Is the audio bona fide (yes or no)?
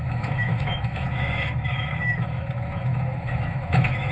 no